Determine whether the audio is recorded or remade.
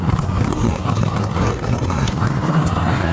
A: remade